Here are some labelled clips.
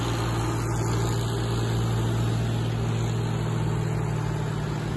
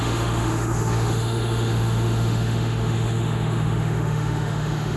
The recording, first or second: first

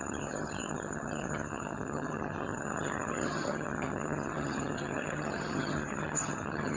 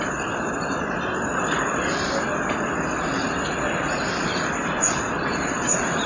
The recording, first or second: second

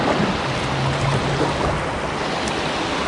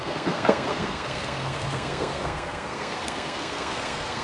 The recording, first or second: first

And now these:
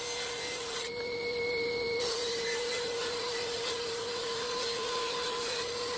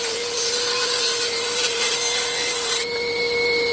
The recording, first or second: second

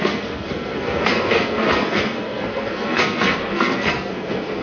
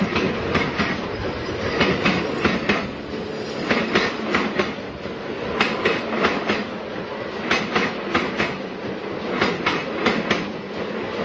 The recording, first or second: second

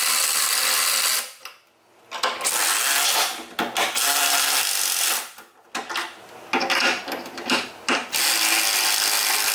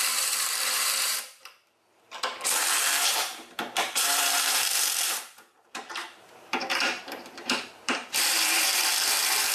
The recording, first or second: first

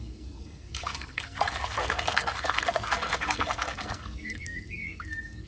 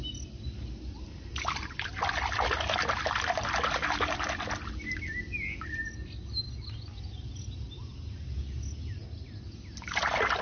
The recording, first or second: second